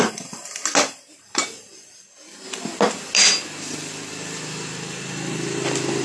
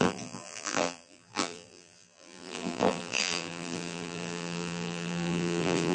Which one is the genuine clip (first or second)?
first